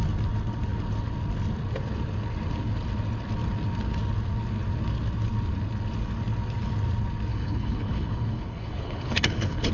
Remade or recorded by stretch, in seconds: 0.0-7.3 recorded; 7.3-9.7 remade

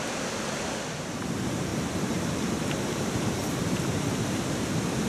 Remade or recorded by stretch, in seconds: 0.0-1.7 recorded; 1.7-4.0 remade; 4.0-5.1 recorded